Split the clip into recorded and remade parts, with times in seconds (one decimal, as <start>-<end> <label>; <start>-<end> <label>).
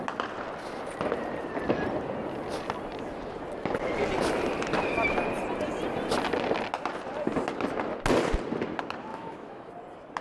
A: 0.0-9.1 recorded; 9.1-9.7 remade; 9.7-10.2 recorded